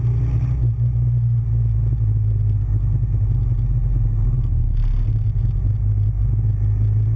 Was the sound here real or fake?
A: real